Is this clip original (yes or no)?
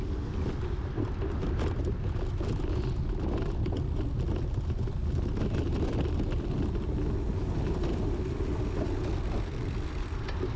yes